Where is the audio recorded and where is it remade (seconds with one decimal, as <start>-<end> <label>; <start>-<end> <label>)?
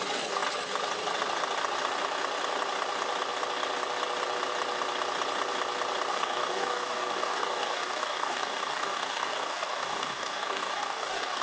0.0-6.1 recorded; 6.1-11.4 remade